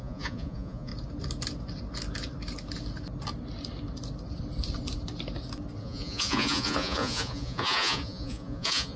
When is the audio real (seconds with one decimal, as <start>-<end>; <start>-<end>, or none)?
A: 0.9-5.8